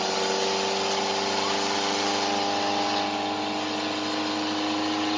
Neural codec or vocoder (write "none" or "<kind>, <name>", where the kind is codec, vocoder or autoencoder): none